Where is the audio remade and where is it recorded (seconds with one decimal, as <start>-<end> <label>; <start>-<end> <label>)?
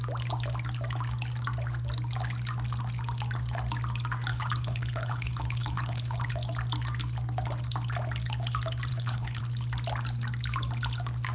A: 0.0-4.3 recorded; 4.3-6.3 remade; 6.3-8.9 recorded; 8.9-9.4 remade; 9.4-11.3 recorded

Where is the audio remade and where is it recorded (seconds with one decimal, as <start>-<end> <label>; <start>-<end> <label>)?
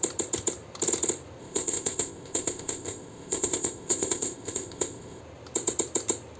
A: 0.0-1.4 recorded; 1.4-5.2 remade; 5.2-6.4 recorded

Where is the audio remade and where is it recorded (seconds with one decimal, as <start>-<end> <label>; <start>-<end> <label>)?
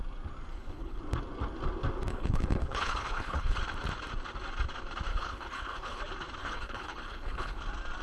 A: 0.0-0.5 recorded; 0.5-1.0 remade; 1.0-2.1 recorded; 2.1-3.6 remade; 3.6-5.1 recorded; 5.1-6.0 remade; 6.0-6.4 recorded; 6.4-7.6 remade; 7.6-8.0 recorded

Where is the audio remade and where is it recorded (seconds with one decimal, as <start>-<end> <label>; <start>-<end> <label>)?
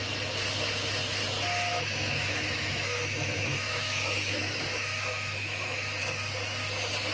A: 0.0-1.7 recorded; 1.7-6.0 remade; 6.0-7.1 recorded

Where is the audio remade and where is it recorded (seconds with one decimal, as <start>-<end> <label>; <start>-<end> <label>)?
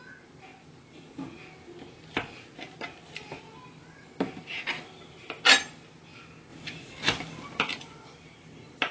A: 0.0-8.9 recorded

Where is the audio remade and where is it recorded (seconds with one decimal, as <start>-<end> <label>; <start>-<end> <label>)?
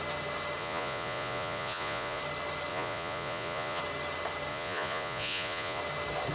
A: 0.0-0.6 recorded; 0.6-2.2 remade; 2.2-2.7 recorded; 2.7-3.8 remade; 3.8-4.5 recorded; 4.5-5.8 remade; 5.8-6.3 recorded